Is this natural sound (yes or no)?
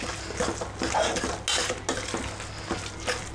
yes